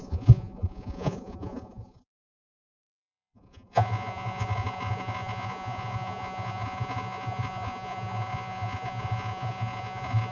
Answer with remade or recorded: remade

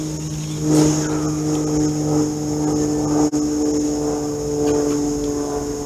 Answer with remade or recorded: recorded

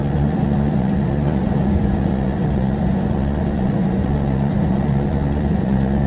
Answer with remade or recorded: remade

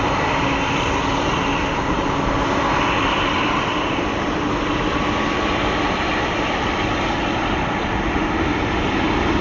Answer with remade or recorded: recorded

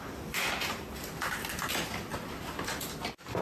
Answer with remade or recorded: recorded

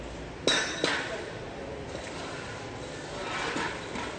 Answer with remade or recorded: recorded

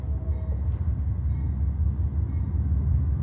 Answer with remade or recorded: recorded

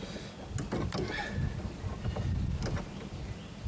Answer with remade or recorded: recorded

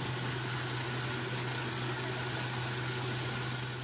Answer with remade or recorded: recorded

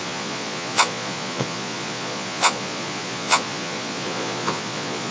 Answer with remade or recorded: remade